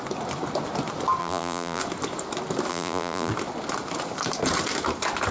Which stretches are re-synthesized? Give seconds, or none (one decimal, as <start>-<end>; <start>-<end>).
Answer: 1.2-1.8; 2.7-3.3